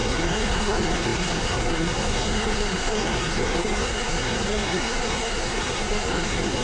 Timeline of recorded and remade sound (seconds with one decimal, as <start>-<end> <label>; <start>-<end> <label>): 0.0-6.6 remade